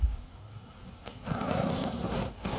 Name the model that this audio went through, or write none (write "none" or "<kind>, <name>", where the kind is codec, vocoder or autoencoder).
codec, SNAC